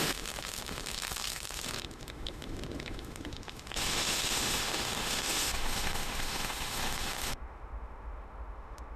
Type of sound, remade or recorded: remade